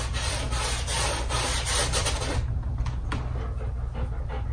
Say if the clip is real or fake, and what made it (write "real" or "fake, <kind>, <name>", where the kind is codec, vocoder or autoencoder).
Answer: real